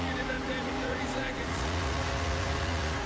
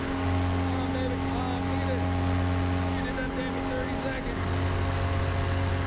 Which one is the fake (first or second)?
first